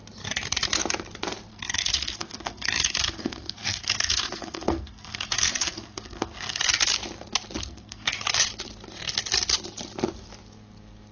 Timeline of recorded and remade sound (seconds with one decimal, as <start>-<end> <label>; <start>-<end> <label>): 0.0-1.5 recorded; 1.5-6.7 remade; 6.7-7.6 recorded; 7.6-8.2 remade; 8.2-11.1 recorded